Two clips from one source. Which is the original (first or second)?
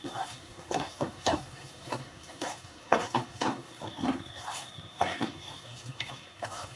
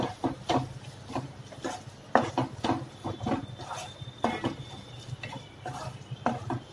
second